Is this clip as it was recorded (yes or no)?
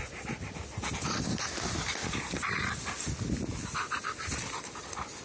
yes